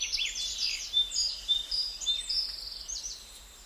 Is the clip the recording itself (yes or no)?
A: yes